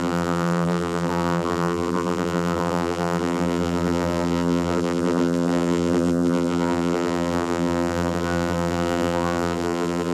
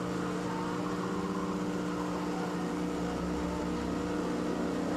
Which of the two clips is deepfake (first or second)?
first